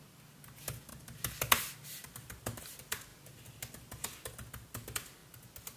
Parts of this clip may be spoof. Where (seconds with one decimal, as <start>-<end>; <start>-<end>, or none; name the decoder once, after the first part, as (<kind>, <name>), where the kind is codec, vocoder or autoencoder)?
none